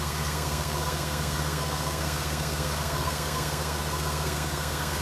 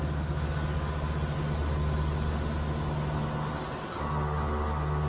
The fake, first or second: first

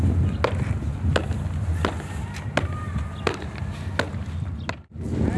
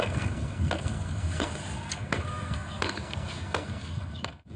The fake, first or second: second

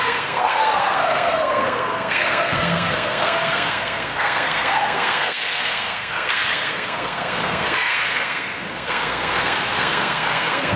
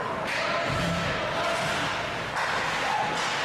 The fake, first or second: first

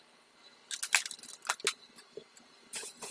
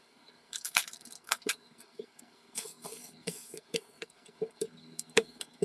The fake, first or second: second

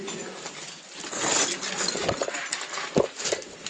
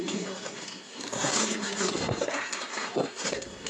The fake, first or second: second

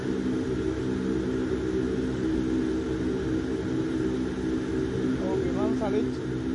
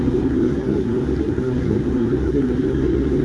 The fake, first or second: second